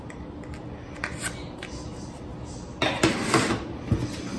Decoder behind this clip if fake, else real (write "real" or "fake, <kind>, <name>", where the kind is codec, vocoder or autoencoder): real